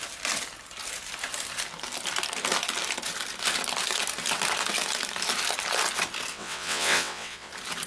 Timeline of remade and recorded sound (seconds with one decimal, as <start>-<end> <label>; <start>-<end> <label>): 0.0-6.3 recorded; 6.3-7.5 remade; 7.5-7.9 recorded